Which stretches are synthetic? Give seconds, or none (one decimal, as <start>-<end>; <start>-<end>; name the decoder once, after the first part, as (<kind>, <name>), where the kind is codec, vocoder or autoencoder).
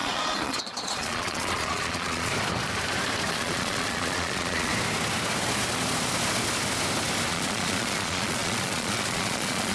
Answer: 0.0-2.3 (vocoder, Vocos); 3.3-4.7; 7.3-9.7